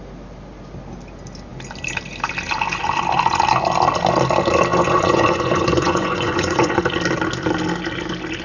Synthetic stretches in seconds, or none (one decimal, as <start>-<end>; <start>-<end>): 4.7-6.8